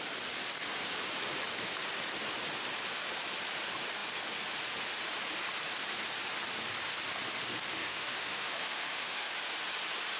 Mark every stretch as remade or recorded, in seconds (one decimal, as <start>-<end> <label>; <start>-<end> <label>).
0.0-7.7 recorded; 7.7-9.3 remade; 9.3-10.2 recorded